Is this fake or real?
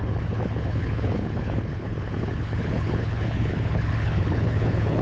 fake